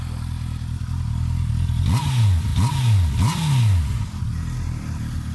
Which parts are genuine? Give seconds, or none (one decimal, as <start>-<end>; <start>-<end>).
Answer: 0.0-5.3